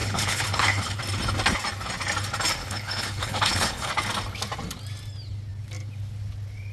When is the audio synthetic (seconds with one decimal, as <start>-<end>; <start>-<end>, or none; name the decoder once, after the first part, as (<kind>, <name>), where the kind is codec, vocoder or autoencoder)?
0.0-1.0 (codec, HILCodec); 2.6-3.9

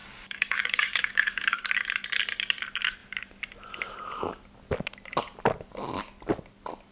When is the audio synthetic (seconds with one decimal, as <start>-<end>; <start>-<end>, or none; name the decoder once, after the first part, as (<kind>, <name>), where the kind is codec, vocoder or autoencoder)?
0.0-1.7 (codec, DAC)